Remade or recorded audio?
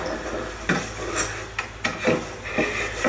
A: recorded